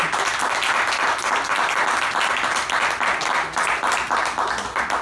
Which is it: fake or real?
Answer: real